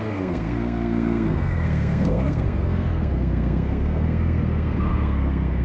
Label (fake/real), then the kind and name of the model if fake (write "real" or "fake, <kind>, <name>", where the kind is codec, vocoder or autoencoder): fake, codec, SNAC